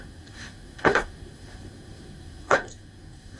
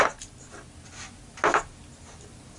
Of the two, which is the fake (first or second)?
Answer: first